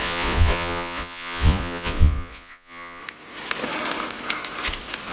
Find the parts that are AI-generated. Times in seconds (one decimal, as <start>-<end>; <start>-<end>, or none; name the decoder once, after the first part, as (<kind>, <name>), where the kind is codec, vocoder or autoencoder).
0.0-3.0 (vocoder, Vocos)